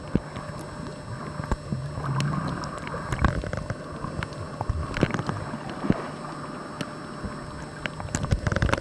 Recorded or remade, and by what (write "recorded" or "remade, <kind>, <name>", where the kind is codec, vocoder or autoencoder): recorded